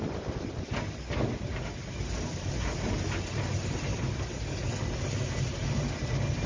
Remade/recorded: recorded